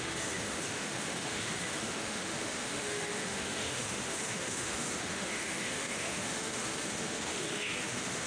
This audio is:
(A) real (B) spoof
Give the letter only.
B